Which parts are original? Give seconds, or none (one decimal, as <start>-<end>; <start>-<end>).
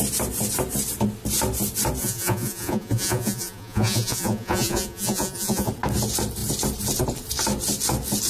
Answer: 0.0-2.0; 5.7-8.3